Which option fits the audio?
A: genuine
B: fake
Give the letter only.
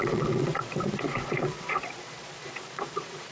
B